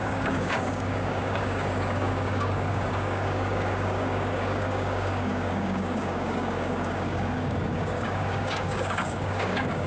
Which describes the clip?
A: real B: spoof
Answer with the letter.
B